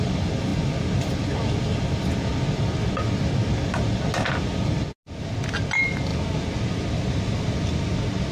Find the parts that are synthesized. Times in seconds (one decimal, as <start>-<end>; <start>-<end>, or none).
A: none